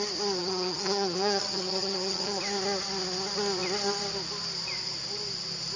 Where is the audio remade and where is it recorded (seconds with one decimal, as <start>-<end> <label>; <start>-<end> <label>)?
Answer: 0.0-0.4 recorded; 0.4-2.4 remade; 2.4-5.8 recorded